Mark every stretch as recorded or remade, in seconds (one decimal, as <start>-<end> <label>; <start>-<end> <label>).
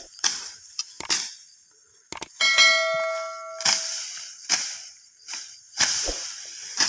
0.0-0.8 remade; 0.8-4.9 recorded; 4.9-6.9 remade